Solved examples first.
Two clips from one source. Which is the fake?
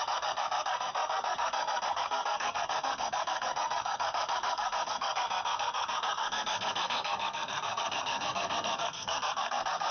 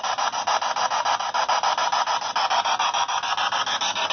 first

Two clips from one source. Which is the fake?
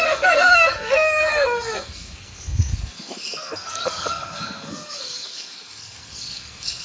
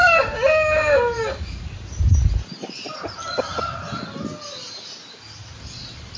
first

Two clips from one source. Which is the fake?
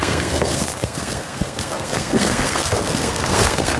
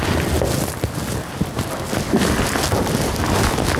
first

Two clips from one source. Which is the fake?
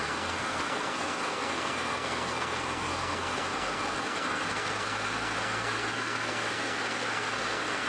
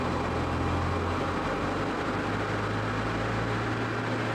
first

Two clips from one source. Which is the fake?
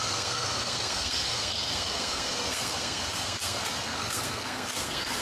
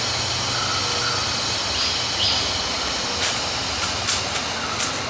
first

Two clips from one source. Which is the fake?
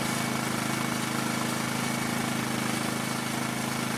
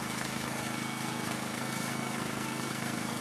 second